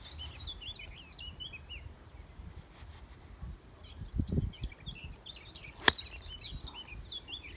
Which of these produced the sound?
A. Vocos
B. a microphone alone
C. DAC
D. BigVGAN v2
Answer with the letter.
B